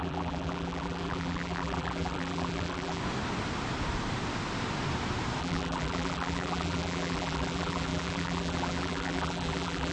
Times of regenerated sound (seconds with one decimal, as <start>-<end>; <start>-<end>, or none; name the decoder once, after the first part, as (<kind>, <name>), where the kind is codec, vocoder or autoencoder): 0.0-3.0 (vocoder, BigVGAN v2); 5.4-9.9